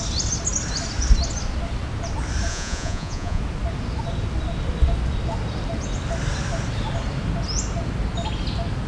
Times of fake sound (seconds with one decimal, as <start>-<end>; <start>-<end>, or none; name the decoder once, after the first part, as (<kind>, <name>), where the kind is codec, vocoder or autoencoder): 2.5-3.4 (vocoder, Vocos)